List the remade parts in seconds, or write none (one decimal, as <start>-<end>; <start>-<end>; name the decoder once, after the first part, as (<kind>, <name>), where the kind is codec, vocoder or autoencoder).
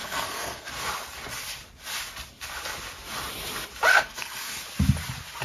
0.0-0.7 (codec, SNAC); 3.9-4.6